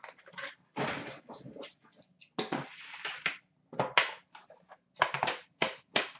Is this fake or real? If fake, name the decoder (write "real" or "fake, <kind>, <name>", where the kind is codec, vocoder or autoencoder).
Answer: real